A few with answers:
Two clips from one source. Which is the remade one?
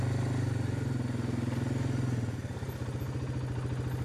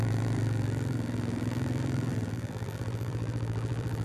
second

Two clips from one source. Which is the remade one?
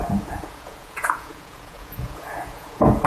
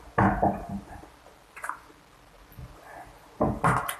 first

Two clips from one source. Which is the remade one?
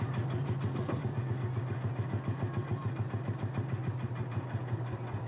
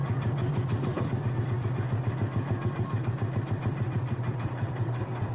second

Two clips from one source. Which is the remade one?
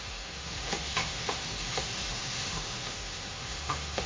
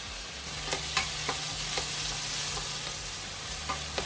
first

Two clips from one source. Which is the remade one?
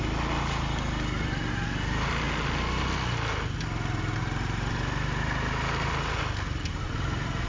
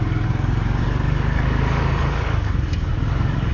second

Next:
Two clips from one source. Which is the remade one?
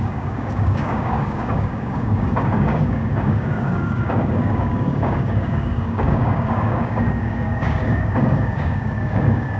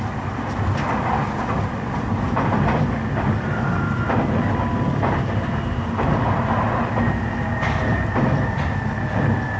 first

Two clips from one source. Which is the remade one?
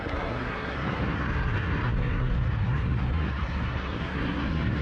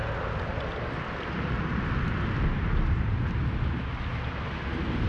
first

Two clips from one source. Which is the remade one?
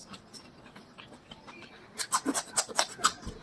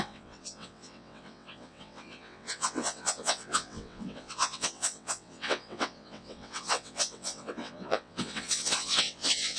second